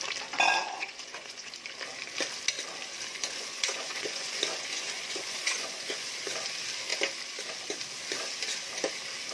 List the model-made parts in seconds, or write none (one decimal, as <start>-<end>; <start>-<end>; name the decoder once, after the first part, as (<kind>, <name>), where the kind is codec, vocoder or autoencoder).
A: 0.6-1.5 (vocoder, Vocos); 3.1-6.1